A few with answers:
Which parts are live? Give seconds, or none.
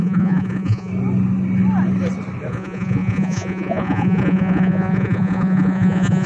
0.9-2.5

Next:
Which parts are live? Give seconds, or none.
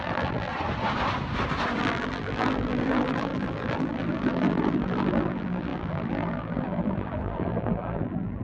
0.5-1.8